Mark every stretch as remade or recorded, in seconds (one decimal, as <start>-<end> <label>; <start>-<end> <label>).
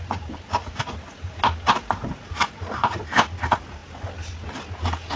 0.0-0.6 recorded; 0.6-1.4 remade; 1.4-5.2 recorded